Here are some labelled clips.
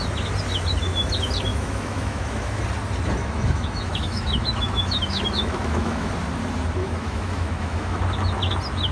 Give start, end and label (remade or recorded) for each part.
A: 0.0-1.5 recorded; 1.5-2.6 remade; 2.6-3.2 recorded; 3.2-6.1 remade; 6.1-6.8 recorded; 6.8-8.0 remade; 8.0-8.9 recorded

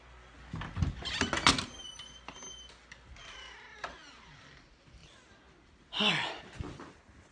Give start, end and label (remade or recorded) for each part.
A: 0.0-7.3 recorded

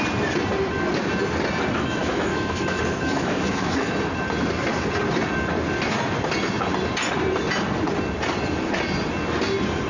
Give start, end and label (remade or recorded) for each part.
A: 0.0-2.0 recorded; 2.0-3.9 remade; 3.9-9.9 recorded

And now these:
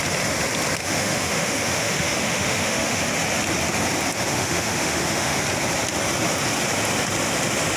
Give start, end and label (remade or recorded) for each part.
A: 0.0-0.8 recorded; 0.8-3.0 remade; 3.0-4.3 recorded; 4.3-5.4 remade; 5.4-7.8 recorded

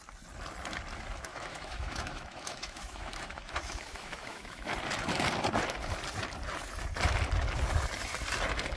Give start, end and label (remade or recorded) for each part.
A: 0.0-1.3 recorded; 1.3-4.7 remade; 4.7-8.8 recorded